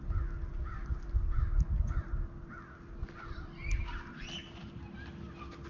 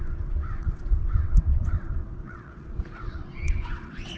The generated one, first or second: second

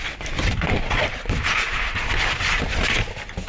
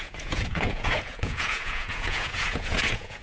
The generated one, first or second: second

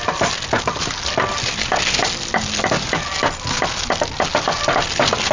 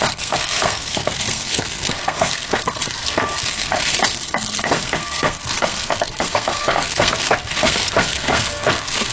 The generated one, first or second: second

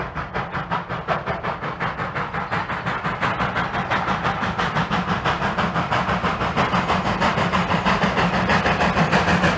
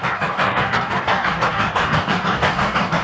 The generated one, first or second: second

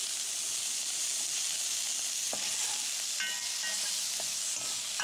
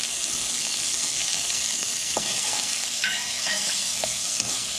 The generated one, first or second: second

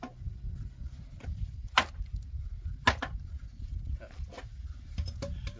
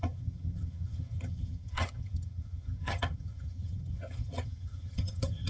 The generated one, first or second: second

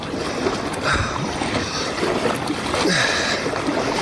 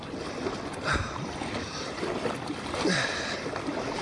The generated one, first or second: second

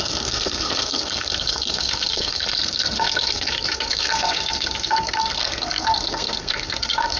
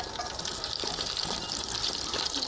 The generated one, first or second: first